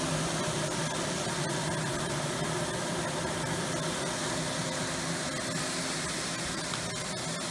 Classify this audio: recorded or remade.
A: recorded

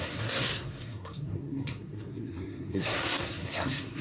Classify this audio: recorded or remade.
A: remade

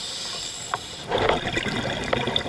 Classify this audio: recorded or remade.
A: recorded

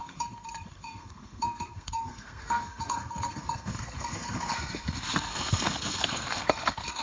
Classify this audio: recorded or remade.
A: remade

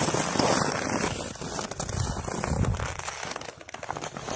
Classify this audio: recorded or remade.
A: recorded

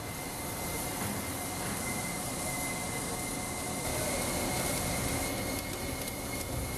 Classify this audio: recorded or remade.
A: recorded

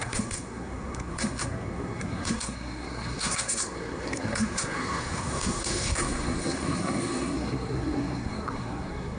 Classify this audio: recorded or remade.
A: remade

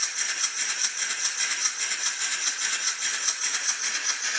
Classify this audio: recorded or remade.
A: recorded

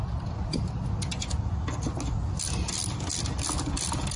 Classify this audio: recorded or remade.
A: recorded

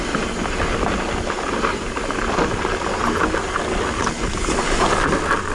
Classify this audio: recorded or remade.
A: recorded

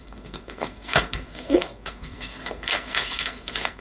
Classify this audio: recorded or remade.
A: remade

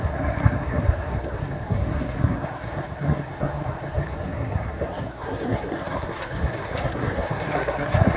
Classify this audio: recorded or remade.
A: remade